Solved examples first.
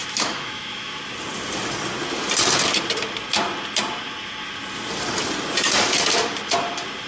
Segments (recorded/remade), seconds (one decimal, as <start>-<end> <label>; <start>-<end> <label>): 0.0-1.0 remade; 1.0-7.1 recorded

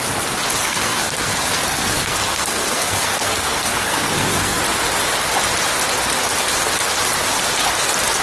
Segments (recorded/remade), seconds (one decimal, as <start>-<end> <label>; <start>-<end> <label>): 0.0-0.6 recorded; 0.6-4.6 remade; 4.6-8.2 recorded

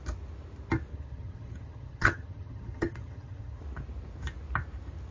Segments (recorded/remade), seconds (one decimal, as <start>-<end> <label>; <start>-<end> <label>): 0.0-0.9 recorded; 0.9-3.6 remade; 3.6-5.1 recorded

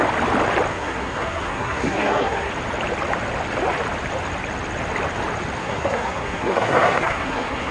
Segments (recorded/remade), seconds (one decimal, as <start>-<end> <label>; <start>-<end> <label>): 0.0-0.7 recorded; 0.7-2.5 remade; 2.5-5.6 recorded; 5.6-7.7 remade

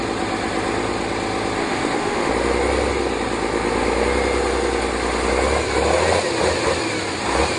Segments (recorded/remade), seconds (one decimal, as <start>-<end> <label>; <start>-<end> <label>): 0.0-1.6 recorded; 1.6-2.3 remade; 2.3-7.6 recorded

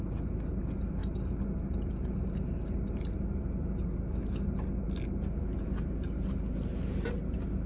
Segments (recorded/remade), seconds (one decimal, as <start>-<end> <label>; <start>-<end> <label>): 0.0-7.7 recorded

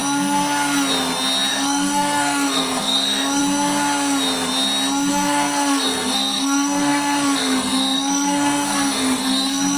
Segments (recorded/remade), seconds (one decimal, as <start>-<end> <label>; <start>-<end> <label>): 0.0-1.5 recorded; 1.5-3.4 remade; 3.4-5.1 recorded; 5.1-9.8 remade

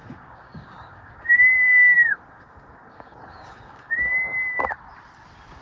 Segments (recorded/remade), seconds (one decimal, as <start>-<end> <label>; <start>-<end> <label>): 0.0-4.1 remade; 4.1-5.6 recorded